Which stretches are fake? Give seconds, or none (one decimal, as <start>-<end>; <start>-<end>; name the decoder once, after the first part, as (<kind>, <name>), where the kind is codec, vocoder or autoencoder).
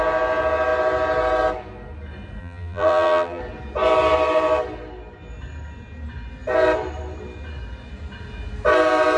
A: 2.4-3.4 (vocoder, BigVGAN v2)